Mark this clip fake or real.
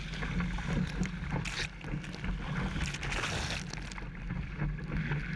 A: real